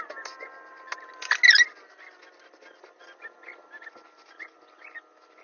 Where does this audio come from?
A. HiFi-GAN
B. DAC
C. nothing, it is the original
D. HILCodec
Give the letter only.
C